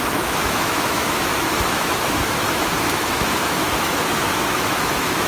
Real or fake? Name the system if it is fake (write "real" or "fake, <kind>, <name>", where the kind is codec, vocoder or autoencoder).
fake, autoencoder, DAC-VAE